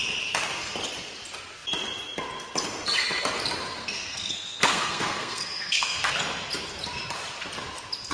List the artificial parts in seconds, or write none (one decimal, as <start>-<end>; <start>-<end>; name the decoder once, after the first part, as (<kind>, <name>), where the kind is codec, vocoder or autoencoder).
3.8-6.1 (codec, SNAC)